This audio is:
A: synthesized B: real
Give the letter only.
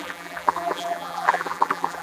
A